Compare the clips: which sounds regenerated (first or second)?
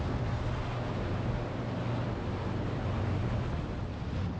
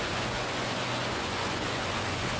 second